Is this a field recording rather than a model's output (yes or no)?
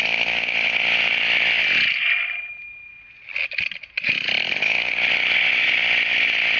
yes